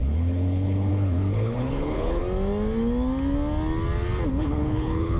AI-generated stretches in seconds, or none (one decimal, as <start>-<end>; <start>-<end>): 0.0-2.2; 4.3-5.2